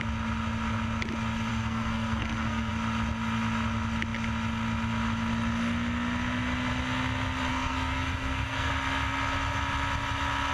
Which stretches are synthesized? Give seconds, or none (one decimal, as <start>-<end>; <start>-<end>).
1.5-2.7; 7.5-8.7